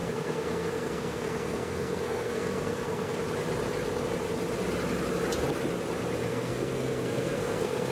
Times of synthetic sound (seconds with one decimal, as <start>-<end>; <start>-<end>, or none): 0.0-3.2; 6.3-7.9